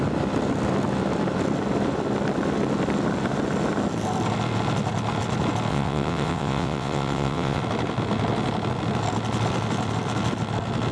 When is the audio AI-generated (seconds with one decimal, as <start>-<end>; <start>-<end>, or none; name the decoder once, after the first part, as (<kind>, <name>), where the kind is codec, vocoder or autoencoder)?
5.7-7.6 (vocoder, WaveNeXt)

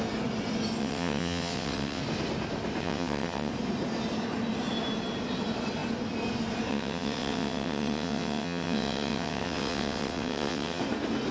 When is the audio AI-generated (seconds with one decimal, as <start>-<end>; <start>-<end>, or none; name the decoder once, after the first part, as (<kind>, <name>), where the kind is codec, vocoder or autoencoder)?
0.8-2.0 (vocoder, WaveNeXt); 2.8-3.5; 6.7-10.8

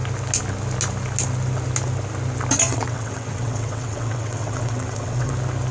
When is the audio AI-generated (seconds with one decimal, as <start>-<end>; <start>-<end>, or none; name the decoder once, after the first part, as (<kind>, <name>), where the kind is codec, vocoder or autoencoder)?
2.7-5.3 (vocoder, WaveNeXt)

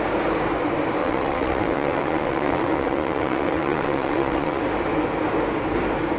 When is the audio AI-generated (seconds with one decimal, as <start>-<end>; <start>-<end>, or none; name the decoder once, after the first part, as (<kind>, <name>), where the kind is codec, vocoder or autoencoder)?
1.0-4.6 (vocoder, WaveNeXt)

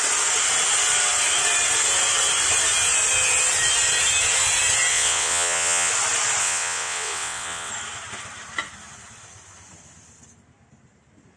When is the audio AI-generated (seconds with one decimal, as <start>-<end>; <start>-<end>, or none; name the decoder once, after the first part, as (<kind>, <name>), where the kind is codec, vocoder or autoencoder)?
4.9-5.9 (vocoder, WaveNeXt); 6.4-7.7

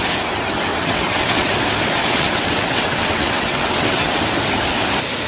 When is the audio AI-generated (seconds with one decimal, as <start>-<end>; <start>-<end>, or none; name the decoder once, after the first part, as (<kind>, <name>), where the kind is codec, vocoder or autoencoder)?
0.7-1.5 (vocoder, WaveNeXt); 2.0-4.2

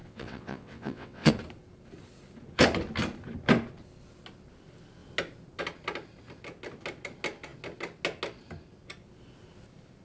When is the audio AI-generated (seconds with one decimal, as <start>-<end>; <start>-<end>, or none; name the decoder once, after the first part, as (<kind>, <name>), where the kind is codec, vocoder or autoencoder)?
0.0-1.3 (vocoder, WaveNeXt)